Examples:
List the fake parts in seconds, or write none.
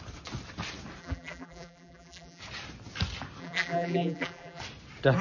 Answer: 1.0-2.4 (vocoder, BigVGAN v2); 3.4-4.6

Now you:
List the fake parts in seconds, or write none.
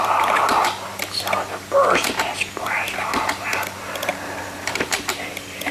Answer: 0.0-0.6 (vocoder, BigVGAN v2); 2.6-5.7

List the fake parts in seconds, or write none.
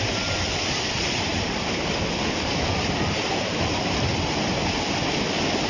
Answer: 1.3-3.8 (vocoder, BigVGAN v2)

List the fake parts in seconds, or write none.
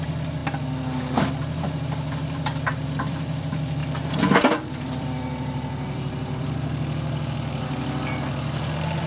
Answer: 0.0-0.4 (vocoder, BigVGAN v2); 1.3-9.1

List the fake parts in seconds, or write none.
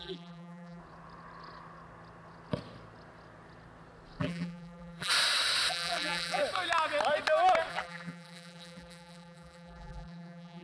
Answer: 0.0-0.8 (vocoder, BigVGAN v2); 4.2-5.1; 5.7-6.4; 7.7-10.6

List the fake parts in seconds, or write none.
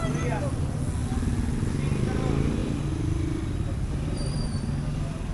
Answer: none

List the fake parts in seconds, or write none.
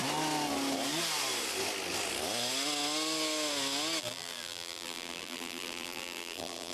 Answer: 4.0-6.7 (vocoder, BigVGAN v2)